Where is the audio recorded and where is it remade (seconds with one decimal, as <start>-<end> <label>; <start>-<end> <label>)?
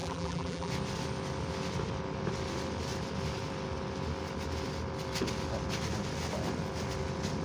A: 0.0-0.7 remade; 0.7-7.4 recorded